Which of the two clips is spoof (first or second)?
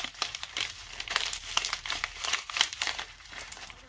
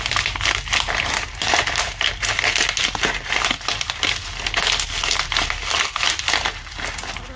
first